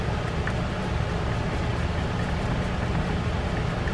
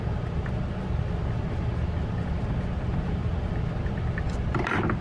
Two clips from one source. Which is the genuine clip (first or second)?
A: first